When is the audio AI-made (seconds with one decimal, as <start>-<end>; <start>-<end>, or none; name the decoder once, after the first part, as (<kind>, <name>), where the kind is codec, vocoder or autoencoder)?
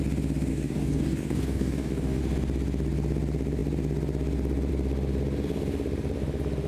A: 0.5-2.2 (codec, DAC)